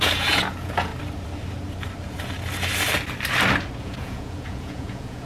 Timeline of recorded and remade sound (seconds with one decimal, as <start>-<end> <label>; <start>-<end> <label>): 0.0-0.9 remade; 0.9-3.8 recorded; 3.8-5.3 remade